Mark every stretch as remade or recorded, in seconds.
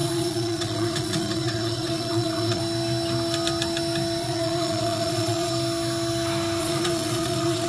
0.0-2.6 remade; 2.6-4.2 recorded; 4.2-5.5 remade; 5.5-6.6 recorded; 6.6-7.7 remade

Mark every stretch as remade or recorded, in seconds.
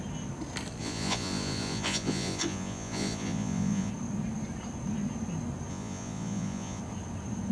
0.0-0.8 recorded; 0.8-3.9 remade; 3.9-5.7 recorded; 5.7-6.8 remade; 6.8-7.5 recorded